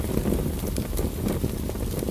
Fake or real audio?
real